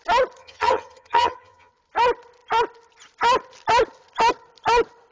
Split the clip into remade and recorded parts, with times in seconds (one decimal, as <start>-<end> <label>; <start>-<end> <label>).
0.0-0.4 recorded; 0.4-1.7 remade; 1.7-5.1 recorded